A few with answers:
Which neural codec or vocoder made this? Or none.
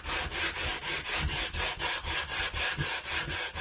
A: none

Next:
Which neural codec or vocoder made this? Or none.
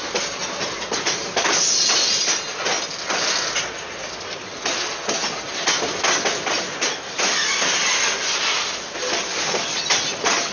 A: none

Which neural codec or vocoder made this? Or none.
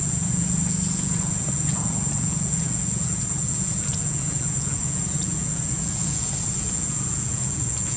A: vocoder, Vocos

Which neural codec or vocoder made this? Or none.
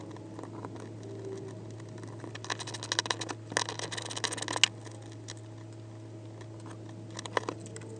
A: none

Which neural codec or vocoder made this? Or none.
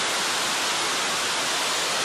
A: none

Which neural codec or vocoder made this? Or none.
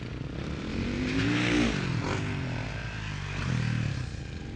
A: none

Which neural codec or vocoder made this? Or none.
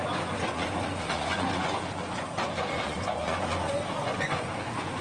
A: vocoder, Vocos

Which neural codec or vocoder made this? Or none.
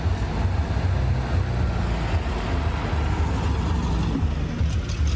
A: none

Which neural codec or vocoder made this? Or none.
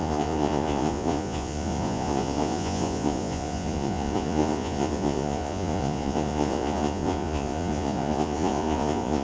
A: vocoder, Vocos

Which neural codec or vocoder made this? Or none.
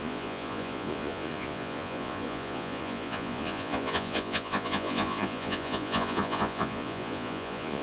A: vocoder, Vocos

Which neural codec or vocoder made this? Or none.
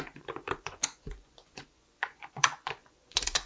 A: vocoder, Vocos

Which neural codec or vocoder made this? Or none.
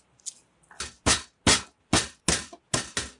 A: none